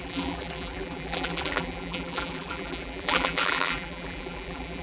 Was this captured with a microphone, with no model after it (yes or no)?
no